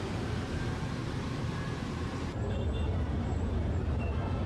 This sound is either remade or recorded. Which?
remade